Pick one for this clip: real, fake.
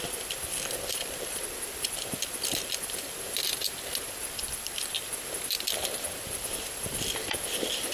fake